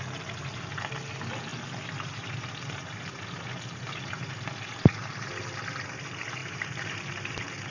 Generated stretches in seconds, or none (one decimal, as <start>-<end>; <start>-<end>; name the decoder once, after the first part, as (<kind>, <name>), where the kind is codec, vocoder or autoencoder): 6.4-7.0 (vocoder, BigVGAN v2)